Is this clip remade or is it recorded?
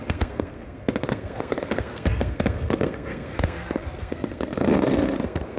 remade